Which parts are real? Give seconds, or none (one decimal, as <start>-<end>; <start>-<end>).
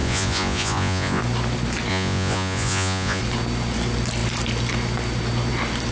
1.2-1.9; 3.2-5.9